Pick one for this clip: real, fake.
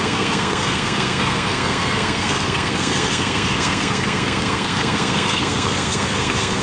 fake